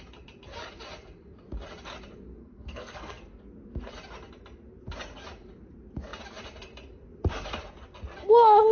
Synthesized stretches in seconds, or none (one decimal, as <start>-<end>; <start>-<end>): 2.4-3.2